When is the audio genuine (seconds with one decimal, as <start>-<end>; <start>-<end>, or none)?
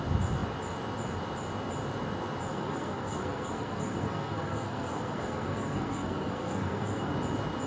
0.0-2.5; 7.1-7.7